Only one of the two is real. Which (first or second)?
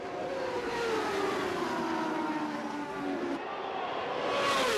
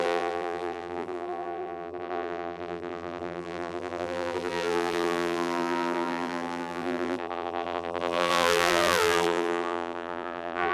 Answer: first